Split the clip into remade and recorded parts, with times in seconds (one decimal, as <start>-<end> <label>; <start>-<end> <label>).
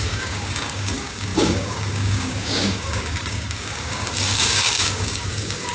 0.0-5.7 remade